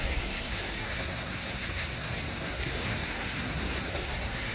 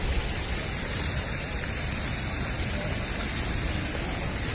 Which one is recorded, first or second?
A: second